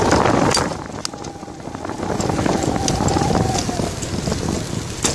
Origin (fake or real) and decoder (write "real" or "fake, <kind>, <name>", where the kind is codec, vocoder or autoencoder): real